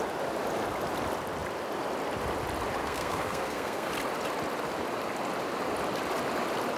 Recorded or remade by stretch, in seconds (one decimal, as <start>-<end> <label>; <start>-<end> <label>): 0.0-2.8 recorded; 2.8-3.9 remade; 3.9-6.8 recorded